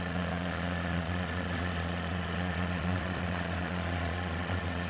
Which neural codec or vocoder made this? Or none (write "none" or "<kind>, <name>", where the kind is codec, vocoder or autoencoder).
vocoder, Vocos